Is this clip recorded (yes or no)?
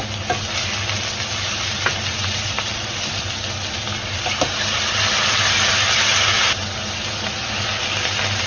yes